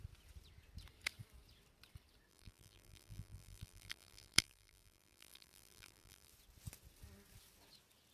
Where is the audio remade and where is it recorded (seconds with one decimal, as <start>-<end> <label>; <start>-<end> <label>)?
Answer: 0.0-2.3 recorded; 2.3-6.3 remade; 6.3-8.1 recorded